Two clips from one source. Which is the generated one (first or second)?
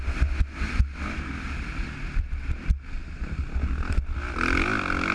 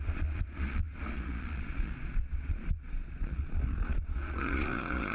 second